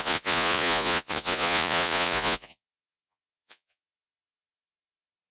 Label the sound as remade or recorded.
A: remade